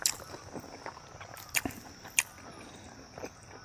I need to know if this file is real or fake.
real